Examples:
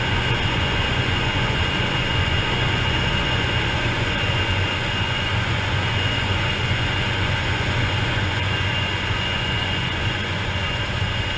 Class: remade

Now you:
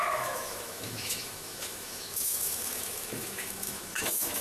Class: remade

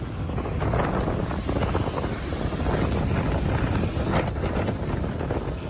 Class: recorded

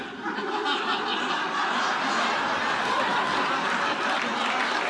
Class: recorded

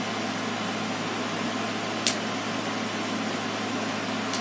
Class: recorded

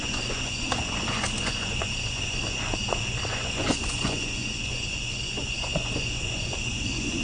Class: remade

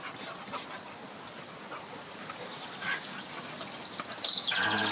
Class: recorded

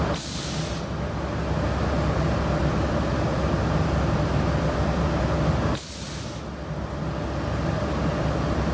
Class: recorded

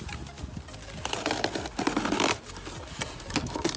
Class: recorded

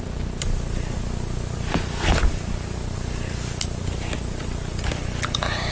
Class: recorded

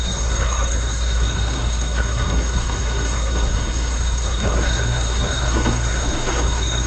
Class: remade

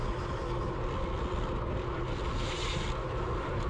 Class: recorded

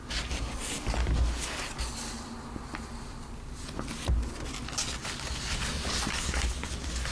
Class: recorded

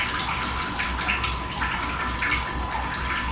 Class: recorded